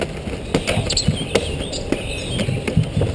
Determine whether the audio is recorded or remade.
recorded